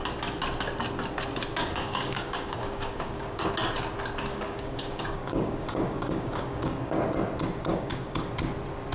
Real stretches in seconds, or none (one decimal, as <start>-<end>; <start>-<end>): 0.0-1.6; 3.5-4.3; 7.0-7.7; 8.3-8.9